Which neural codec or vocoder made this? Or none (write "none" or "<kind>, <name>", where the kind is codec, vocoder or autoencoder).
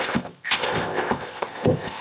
codec, ZipCodec